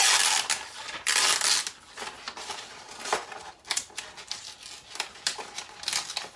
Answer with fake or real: real